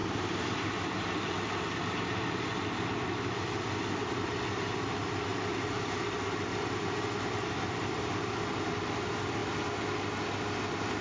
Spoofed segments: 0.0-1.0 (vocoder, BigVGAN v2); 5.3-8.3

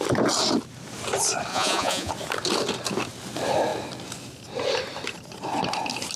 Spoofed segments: 1.5-2.1 (vocoder, Vocos)

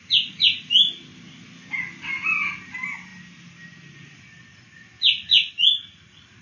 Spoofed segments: none